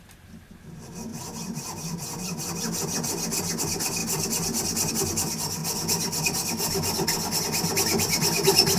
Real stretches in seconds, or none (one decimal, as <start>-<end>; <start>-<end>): 0.0-8.8